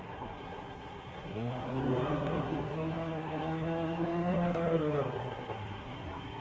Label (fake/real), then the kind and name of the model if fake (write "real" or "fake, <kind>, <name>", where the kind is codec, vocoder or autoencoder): fake, codec, SNAC